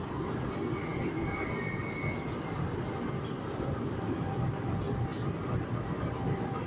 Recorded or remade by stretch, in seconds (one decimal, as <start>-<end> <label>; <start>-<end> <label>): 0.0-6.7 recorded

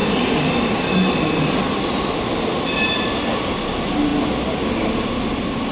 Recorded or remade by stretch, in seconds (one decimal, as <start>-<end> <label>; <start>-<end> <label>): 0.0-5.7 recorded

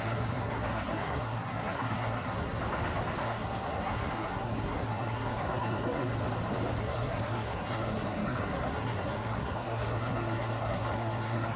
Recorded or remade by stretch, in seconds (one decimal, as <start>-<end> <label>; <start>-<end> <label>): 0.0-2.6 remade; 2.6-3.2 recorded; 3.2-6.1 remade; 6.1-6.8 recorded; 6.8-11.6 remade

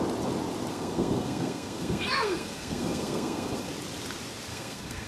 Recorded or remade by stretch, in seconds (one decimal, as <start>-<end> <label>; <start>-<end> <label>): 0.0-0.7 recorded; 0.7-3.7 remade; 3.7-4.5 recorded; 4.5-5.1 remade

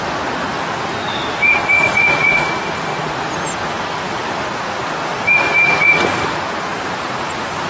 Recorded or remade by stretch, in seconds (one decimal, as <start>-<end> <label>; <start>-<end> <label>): 0.0-6.7 recorded; 6.7-7.7 remade

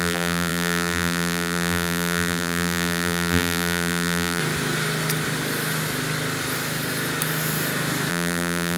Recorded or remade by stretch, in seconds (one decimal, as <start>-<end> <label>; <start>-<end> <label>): 0.0-4.4 remade; 4.4-8.1 recorded; 8.1-8.8 remade